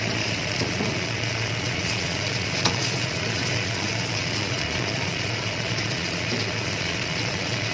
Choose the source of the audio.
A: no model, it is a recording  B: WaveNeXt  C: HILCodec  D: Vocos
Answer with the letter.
D